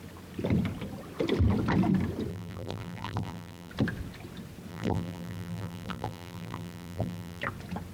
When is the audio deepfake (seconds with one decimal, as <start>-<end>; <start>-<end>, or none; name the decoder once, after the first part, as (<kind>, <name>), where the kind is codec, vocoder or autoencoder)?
2.3-3.7 (vocoder, BigVGAN v2); 4.7-7.4